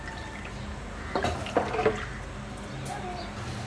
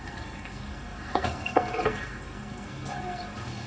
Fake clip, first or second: second